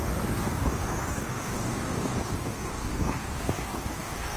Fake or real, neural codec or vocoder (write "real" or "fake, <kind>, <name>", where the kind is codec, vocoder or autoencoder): fake, codec, DAC